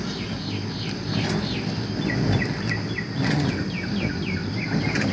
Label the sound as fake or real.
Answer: real